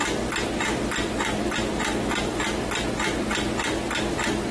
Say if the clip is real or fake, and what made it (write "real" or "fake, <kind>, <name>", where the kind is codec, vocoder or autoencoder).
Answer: real